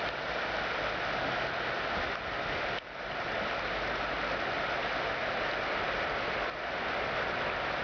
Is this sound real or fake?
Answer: real